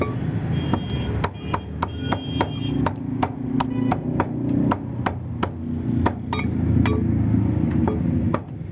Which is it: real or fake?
real